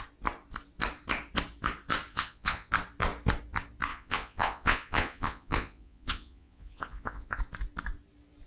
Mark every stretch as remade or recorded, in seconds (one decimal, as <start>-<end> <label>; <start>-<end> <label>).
0.0-2.1 recorded; 2.1-2.7 remade; 2.7-3.9 recorded; 3.9-7.4 remade; 7.4-8.5 recorded